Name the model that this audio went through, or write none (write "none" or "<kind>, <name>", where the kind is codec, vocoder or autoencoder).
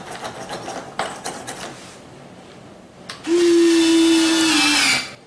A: none